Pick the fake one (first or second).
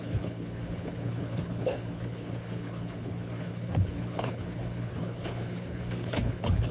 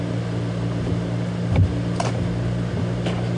first